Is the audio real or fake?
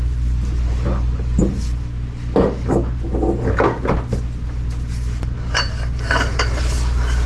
real